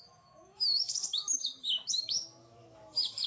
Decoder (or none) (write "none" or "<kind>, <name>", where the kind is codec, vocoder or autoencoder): autoencoder, DAC-VAE